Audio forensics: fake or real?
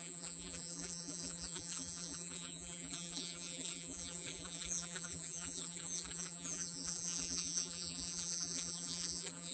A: fake